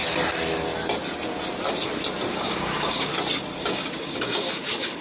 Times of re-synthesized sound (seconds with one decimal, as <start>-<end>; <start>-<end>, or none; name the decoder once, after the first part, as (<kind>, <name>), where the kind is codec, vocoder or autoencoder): 2.3-3.1 (codec, DAC); 3.6-5.0